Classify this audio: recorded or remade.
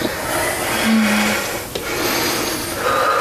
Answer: recorded